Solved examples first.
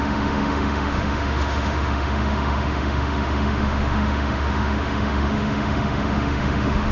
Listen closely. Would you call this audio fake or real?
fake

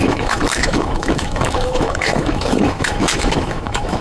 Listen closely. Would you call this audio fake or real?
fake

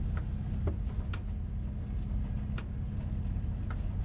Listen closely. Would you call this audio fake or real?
real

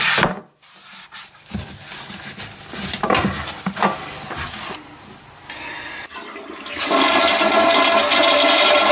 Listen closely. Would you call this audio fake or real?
real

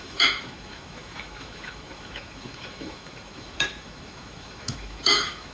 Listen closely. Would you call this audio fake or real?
fake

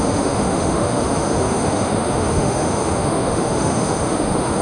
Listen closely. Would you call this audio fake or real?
fake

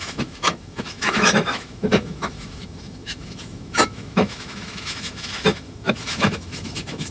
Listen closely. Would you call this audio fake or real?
fake